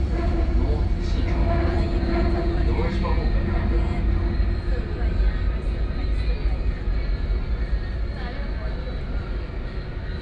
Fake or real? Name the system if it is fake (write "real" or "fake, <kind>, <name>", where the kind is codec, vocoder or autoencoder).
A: real